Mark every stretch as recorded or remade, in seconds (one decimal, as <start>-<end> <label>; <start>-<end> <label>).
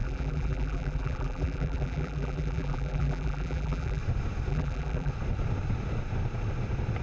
0.0-4.0 remade; 4.0-4.5 recorded; 4.5-5.1 remade; 5.1-7.0 recorded